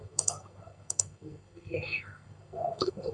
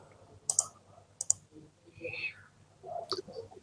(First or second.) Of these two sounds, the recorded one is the second